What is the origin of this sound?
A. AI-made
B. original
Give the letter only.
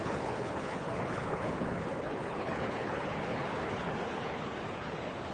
A